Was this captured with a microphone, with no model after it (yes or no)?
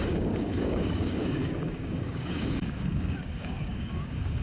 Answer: no